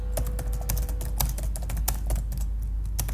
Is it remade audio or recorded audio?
recorded